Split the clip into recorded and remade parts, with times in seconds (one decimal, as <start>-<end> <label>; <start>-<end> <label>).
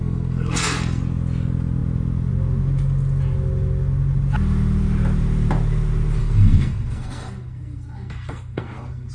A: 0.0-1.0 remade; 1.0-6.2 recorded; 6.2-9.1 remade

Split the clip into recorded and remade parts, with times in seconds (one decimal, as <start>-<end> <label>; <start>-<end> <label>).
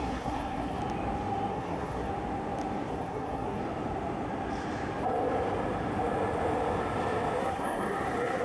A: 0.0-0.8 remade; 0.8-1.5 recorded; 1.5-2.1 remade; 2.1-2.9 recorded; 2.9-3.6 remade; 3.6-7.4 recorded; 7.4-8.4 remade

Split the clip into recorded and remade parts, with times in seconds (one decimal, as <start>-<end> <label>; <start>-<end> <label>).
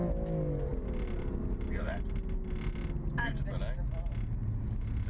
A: 0.0-5.1 recorded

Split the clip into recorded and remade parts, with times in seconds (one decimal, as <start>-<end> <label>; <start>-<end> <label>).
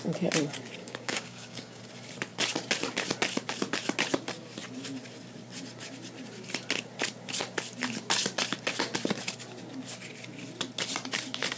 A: 0.0-0.8 recorded; 0.8-1.8 remade; 1.8-11.6 recorded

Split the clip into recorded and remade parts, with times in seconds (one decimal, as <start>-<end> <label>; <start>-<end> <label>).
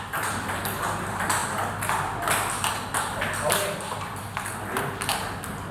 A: 0.0-5.7 recorded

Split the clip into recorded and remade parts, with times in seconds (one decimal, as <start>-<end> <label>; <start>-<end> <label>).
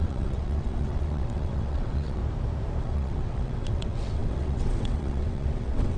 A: 0.0-2.2 remade; 2.2-2.8 recorded; 2.8-6.0 remade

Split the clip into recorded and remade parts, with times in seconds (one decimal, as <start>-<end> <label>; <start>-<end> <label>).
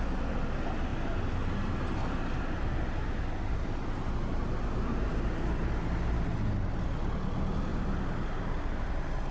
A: 0.0-9.3 recorded